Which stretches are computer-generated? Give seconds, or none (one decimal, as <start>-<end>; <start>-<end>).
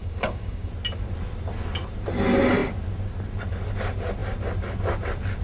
0.0-0.7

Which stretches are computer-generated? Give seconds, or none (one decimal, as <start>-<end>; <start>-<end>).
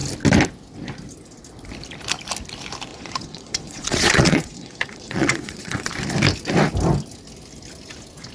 2.9-5.9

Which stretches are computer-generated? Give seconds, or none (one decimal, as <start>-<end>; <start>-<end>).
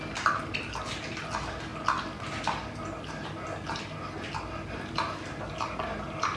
none